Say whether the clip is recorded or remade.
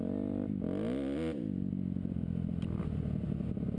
recorded